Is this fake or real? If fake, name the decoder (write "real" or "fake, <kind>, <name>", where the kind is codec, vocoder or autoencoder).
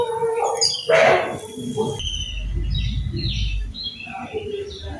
real